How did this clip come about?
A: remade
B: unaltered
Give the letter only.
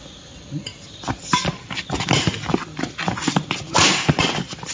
B